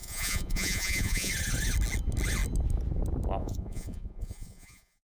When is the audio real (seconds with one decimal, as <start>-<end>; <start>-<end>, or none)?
1.3-3.4